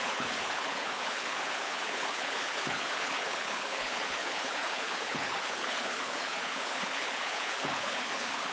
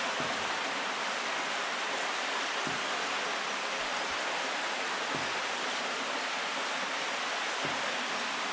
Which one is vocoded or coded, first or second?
first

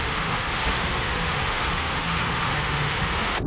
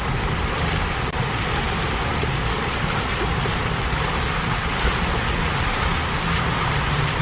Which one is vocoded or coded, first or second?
first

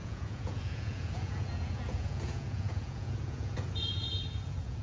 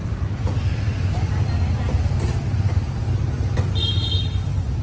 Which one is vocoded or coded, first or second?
first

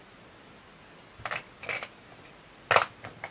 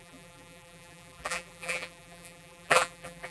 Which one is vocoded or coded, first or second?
second